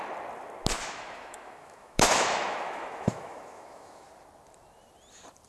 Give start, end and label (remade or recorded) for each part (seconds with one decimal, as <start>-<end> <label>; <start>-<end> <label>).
0.0-0.8 recorded; 0.8-4.1 remade; 4.1-5.5 recorded